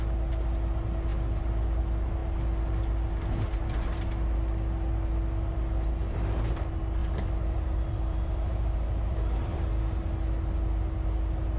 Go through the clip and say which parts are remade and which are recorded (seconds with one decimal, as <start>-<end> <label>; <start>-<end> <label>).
0.0-7.0 recorded; 7.0-10.0 remade; 10.0-11.6 recorded